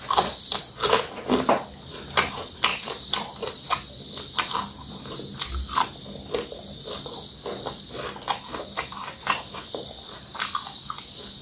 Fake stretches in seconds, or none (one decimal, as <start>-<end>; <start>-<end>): none